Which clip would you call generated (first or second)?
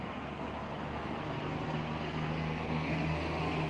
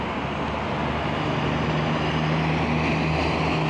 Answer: first